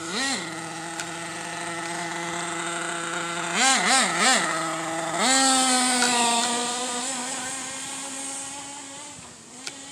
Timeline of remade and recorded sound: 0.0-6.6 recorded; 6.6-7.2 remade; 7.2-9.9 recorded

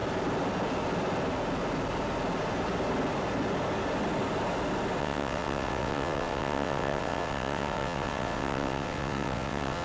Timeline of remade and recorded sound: 0.0-5.0 recorded; 5.0-9.8 remade

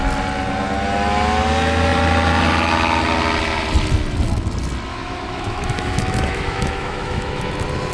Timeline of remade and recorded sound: 0.0-4.9 recorded; 4.9-7.5 remade; 7.5-7.9 recorded

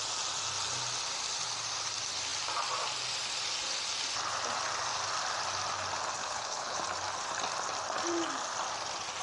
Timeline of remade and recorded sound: 0.0-6.2 recorded; 6.2-6.8 remade; 6.8-9.2 recorded

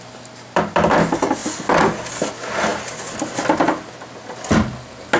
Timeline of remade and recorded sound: 0.0-5.2 recorded